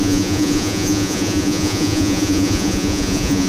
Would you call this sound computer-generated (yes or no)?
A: yes